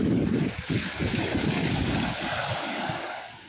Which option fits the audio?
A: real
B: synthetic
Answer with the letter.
B